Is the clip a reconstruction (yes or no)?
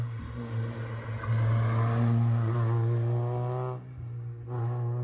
no